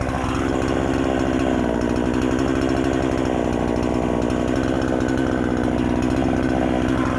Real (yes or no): yes